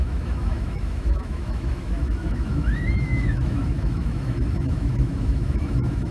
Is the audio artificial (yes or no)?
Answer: yes